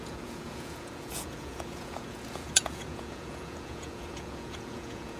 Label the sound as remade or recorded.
remade